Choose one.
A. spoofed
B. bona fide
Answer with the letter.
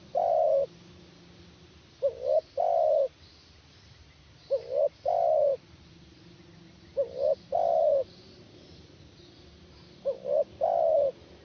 B